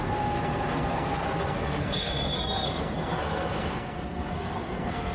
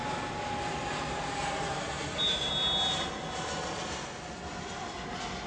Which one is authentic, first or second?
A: second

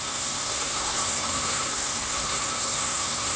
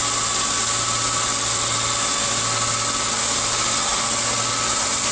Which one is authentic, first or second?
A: second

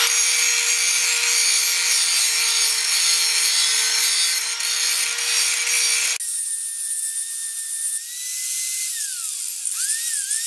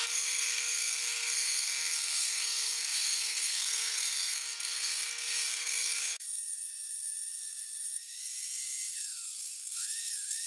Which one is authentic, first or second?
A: first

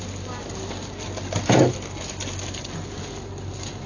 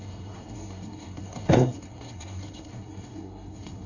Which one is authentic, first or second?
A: first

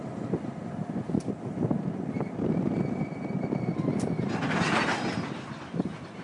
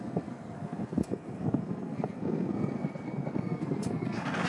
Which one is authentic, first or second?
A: first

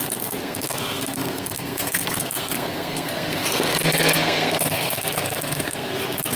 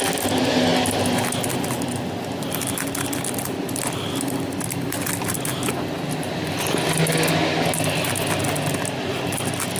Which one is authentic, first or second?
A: second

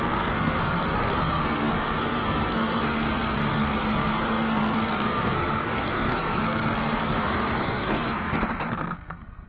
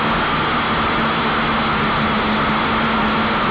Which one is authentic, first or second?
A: second